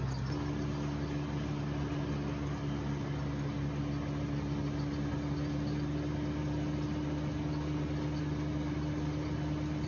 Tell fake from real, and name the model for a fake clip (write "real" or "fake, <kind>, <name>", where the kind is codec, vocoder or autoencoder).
real